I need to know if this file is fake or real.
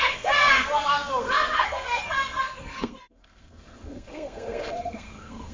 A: fake